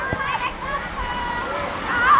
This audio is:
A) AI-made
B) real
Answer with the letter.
B